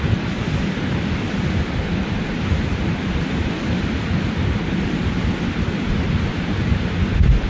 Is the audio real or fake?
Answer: real